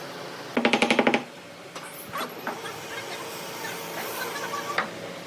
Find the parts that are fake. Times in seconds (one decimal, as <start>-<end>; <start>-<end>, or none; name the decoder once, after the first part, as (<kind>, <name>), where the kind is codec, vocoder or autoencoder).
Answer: 1.2-4.4 (vocoder, BigVGAN v2)